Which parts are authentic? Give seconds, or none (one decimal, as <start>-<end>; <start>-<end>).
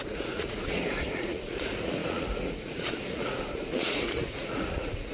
none